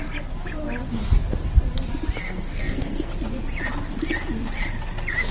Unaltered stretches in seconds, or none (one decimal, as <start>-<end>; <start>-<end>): 0.0-2.2; 3.1-5.3